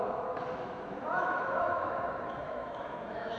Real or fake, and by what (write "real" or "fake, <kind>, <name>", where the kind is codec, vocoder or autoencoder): fake, autoencoder, DAC-VAE